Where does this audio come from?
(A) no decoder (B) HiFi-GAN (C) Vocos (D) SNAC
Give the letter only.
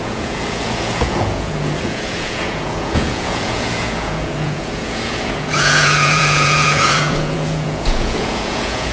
C